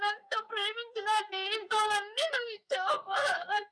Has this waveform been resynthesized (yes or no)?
yes